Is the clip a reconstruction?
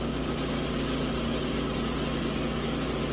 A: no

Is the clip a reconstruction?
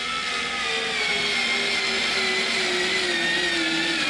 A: no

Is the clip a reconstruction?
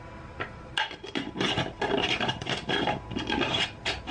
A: no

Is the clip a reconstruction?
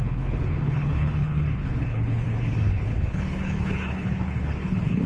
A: yes